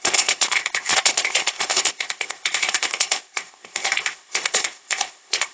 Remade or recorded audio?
remade